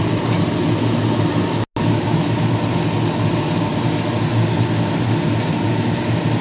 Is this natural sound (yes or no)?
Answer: yes